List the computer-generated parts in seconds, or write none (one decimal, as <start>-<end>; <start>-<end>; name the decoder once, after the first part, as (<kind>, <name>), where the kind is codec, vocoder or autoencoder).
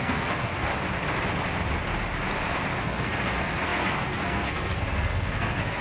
0.0-0.7 (codec, SNAC); 2.8-5.8